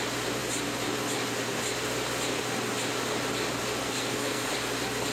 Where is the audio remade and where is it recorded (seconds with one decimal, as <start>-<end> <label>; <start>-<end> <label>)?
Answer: 0.0-3.8 recorded; 3.8-4.5 remade; 4.5-5.1 recorded